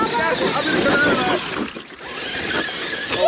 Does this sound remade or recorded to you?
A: recorded